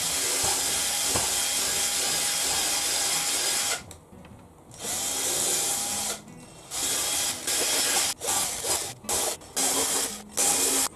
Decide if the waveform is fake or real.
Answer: real